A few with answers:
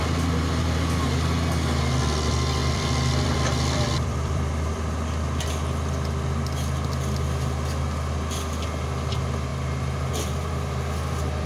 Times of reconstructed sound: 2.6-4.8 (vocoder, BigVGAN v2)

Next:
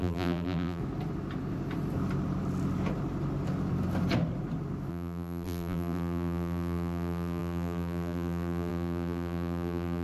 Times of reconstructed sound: 0.0-0.8 (vocoder, BigVGAN v2); 4.9-10.0

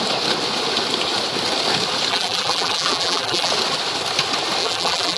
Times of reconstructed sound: 2.1-3.5 (vocoder, BigVGAN v2); 4.6-5.2

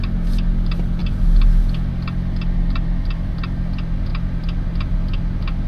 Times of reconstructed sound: none

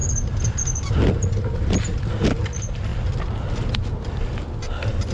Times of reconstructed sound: 2.9-3.5 (vocoder, BigVGAN v2)